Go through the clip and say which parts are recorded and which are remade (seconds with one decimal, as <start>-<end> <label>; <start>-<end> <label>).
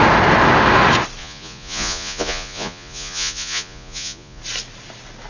0.0-1.2 recorded; 1.2-4.4 remade; 4.4-5.3 recorded